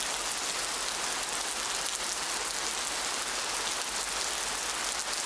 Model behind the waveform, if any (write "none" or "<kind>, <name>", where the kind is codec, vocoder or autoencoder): none